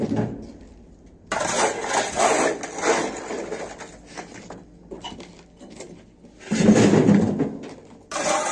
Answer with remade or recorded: recorded